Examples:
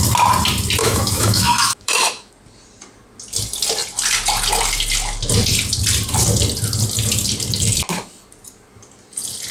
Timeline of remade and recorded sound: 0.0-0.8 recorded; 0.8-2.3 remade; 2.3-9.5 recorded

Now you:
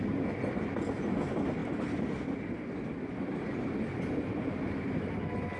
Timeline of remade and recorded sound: 0.0-5.6 recorded